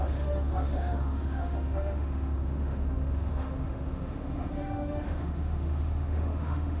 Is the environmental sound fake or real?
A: fake